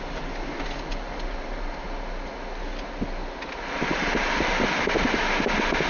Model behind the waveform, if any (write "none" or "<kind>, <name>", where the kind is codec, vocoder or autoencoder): none